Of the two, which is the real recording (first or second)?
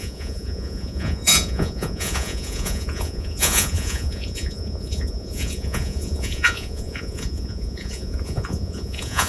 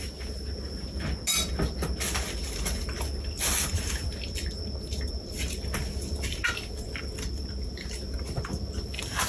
second